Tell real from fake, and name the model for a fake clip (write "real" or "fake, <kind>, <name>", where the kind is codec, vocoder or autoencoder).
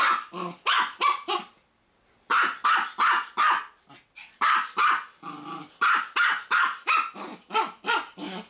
real